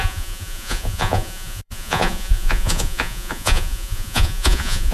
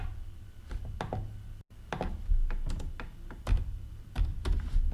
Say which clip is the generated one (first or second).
first